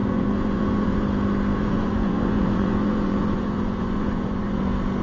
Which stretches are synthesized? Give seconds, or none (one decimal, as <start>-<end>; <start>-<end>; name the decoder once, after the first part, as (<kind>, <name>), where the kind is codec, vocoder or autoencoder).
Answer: 0.0-1.0 (vocoder, Vocos); 1.6-4.6